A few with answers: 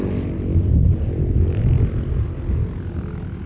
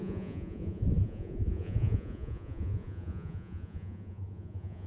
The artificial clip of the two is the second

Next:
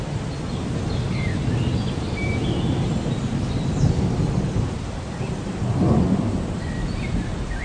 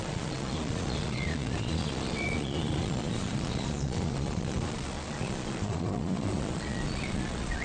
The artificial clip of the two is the second